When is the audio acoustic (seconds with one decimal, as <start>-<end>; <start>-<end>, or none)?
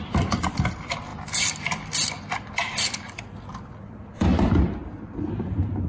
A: none